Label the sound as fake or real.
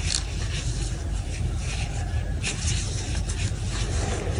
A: fake